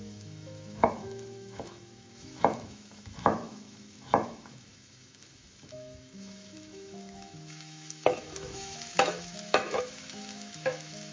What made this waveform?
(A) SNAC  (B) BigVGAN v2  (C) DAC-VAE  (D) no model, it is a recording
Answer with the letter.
C